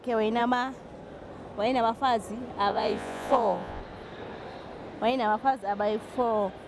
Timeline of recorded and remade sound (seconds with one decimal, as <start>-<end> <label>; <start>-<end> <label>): 0.0-2.7 recorded; 2.7-3.8 remade; 3.8-6.7 recorded